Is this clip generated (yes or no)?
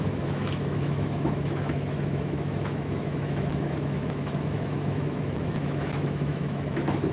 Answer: yes